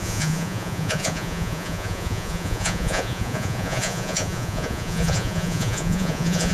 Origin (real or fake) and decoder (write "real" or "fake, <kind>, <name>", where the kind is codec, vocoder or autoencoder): fake, vocoder, Vocos